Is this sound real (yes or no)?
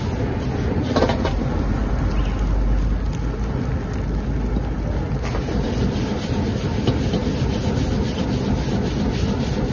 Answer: yes